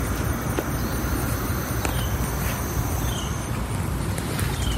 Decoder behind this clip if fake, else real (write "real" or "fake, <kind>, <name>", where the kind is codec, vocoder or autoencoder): real